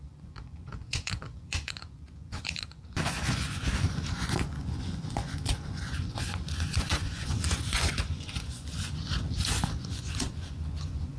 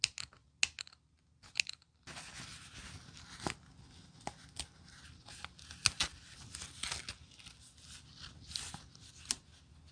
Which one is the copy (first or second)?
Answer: first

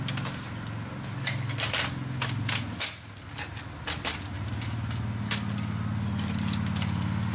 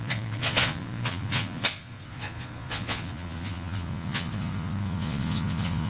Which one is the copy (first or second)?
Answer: second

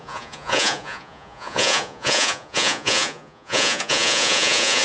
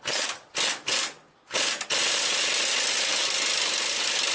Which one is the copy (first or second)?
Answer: first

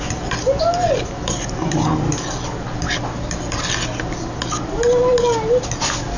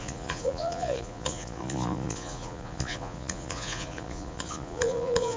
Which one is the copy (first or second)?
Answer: second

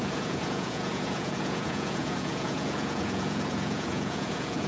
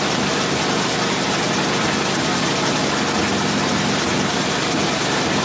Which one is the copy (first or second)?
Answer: first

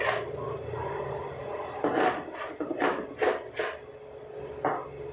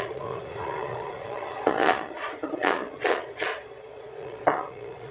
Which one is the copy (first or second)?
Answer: second